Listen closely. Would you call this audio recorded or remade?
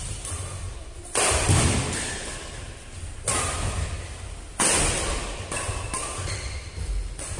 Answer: recorded